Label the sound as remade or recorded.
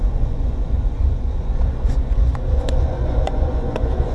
remade